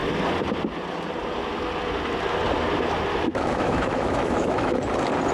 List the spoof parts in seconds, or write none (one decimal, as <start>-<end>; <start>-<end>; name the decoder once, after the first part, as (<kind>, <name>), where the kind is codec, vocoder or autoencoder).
3.1-4.7 (autoencoder, DAC-VAE)